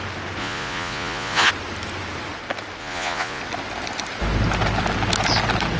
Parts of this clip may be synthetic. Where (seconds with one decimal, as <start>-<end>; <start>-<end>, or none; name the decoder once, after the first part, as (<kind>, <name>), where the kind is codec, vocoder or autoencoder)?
0.4-1.5 (vocoder, Vocos); 2.8-3.4